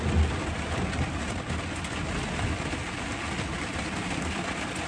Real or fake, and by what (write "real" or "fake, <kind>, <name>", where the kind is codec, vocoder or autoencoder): real